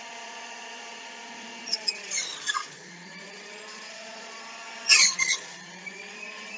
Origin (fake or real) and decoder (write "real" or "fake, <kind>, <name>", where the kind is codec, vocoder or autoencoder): fake, vocoder, Vocos